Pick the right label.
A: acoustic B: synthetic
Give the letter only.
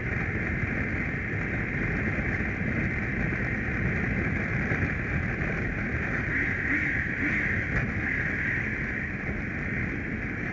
A